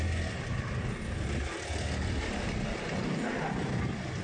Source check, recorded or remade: recorded